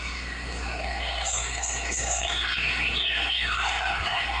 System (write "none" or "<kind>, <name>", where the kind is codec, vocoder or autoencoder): codec, SNAC